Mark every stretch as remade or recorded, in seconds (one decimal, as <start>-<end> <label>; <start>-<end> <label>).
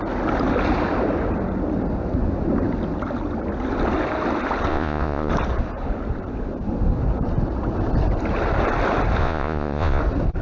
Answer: 0.0-4.7 recorded; 4.7-5.3 remade; 5.3-9.2 recorded; 9.2-10.0 remade; 10.0-10.4 recorded